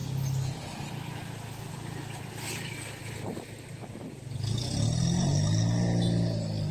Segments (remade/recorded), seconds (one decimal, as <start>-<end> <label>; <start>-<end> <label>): 0.0-6.7 recorded

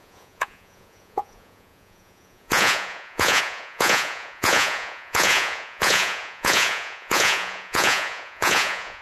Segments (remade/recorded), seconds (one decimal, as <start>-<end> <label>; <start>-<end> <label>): 0.0-9.0 remade